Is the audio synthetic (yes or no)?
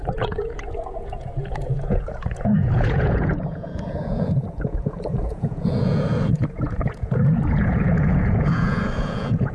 yes